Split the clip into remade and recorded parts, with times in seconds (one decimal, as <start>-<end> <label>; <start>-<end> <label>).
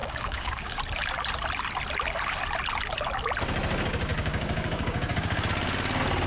0.0-0.8 remade; 0.8-4.1 recorded; 4.1-5.5 remade; 5.5-6.3 recorded